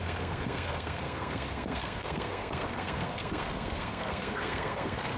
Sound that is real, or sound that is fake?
fake